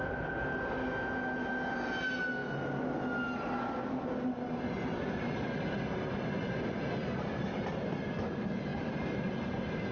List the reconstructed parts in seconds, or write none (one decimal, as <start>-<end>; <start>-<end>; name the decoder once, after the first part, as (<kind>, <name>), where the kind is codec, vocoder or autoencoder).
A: none